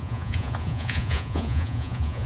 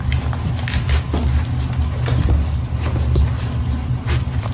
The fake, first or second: first